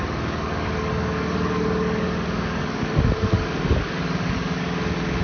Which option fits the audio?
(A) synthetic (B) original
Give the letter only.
A